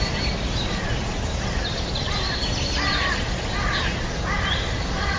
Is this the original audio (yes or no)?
yes